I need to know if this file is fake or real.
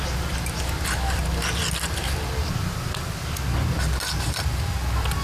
real